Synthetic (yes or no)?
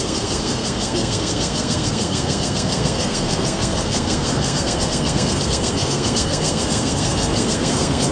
yes